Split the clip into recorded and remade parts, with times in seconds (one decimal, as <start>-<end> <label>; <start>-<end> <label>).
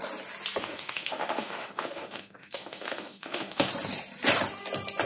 0.0-0.6 recorded; 0.6-3.7 remade; 3.7-5.1 recorded